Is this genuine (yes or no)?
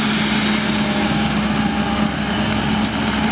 yes